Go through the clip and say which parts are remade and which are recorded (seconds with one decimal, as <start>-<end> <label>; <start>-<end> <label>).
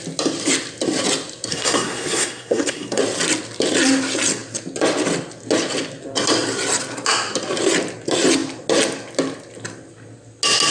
0.0-1.5 recorded; 1.5-3.0 remade; 3.0-10.7 recorded